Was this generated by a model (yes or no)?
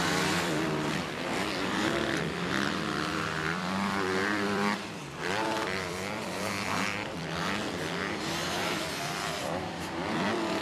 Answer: yes